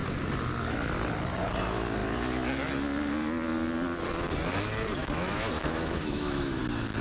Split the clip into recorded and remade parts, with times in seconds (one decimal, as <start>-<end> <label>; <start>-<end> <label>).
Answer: 0.0-5.0 recorded; 5.0-6.6 remade; 6.6-7.0 recorded

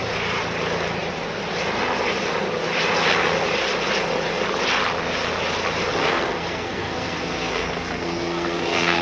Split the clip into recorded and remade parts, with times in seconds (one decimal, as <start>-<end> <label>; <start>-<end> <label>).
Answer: 0.0-6.0 recorded; 6.0-9.0 remade

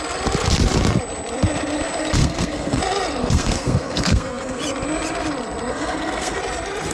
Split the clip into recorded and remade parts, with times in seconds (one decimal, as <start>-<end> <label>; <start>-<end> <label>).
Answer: 0.0-2.2 recorded; 2.2-2.8 remade; 2.8-3.2 recorded; 3.2-4.6 remade; 4.6-5.7 recorded; 5.7-6.4 remade; 6.4-6.9 recorded

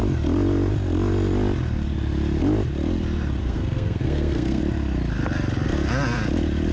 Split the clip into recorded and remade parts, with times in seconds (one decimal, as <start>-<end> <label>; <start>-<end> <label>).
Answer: 0.0-3.4 recorded; 3.4-4.6 remade; 4.6-6.7 recorded

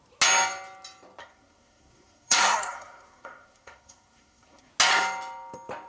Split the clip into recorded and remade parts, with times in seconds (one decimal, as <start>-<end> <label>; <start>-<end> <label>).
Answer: 0.0-1.2 recorded; 1.2-4.7 remade; 4.7-5.9 recorded

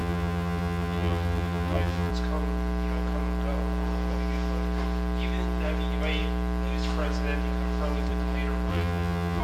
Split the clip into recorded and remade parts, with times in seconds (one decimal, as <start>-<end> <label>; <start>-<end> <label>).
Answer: 0.0-2.1 remade; 2.1-8.7 recorded; 8.7-9.4 remade